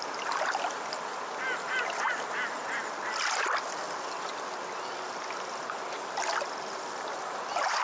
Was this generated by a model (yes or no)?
no